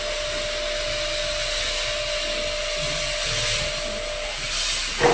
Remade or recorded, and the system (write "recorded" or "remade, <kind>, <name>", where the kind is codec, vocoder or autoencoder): recorded